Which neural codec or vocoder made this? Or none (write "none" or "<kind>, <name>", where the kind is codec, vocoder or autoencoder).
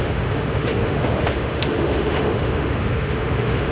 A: autoencoder, DAC-VAE